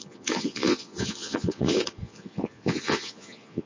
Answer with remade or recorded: remade